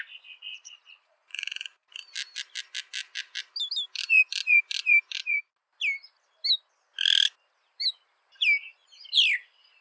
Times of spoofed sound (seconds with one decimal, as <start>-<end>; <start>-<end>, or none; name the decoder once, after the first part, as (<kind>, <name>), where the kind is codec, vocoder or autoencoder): 0.5-1.9 (vocoder, Vocos)